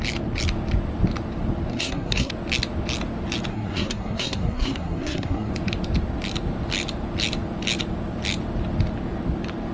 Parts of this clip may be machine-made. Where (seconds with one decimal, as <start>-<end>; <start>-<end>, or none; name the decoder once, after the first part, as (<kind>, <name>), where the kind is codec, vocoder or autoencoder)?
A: 1.7-2.3 (codec, SNAC); 3.5-5.5

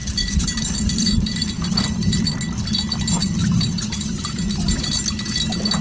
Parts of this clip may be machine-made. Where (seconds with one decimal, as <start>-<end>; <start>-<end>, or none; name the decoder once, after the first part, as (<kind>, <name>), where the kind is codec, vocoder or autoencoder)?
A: 0.0-2.3 (vocoder, BigVGAN v2); 3.4-4.4

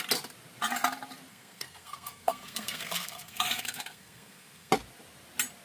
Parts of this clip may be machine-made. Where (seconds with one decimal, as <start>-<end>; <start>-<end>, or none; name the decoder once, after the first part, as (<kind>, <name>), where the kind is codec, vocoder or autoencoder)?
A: 1.3-4.7 (codec, SNAC)

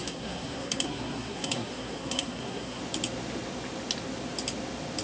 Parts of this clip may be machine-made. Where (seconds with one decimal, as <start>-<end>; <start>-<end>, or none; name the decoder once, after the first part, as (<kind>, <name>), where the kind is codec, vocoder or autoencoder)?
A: 0.0-2.8 (codec, SNAC)